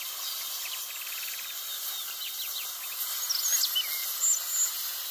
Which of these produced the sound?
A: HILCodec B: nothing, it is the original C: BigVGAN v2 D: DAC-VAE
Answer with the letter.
B